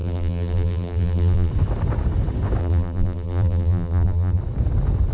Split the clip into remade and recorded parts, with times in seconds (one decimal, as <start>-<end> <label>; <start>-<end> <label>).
0.0-1.5 remade; 1.5-2.6 recorded; 2.6-4.4 remade; 4.4-5.1 recorded

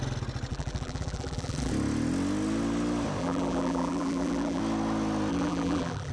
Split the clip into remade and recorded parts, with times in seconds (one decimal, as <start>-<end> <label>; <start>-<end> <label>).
0.0-0.5 recorded; 0.5-1.7 remade; 1.7-3.2 recorded; 3.2-4.6 remade; 4.6-5.3 recorded; 5.3-6.1 remade

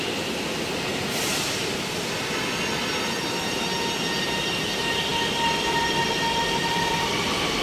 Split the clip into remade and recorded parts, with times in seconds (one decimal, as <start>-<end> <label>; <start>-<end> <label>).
0.0-7.6 recorded

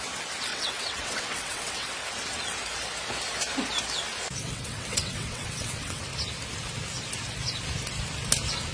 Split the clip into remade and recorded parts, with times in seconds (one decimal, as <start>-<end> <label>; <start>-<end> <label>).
0.0-0.5 recorded; 0.5-1.9 remade; 1.9-4.4 recorded; 4.4-6.0 remade; 6.0-8.7 recorded

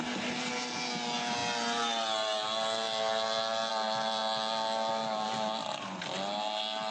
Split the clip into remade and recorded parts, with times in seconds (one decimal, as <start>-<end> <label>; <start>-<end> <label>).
0.0-6.9 recorded

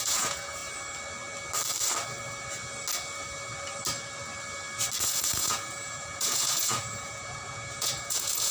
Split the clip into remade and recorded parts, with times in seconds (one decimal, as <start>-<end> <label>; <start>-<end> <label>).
0.0-0.6 remade; 0.6-5.0 recorded; 5.0-8.5 remade

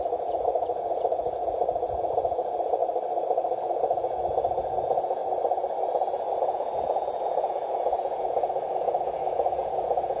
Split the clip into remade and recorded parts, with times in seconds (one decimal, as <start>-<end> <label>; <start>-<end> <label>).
0.0-2.8 remade; 2.8-3.6 recorded; 3.6-5.2 remade; 5.2-6.4 recorded; 6.4-10.2 remade